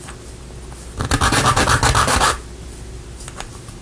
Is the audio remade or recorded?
recorded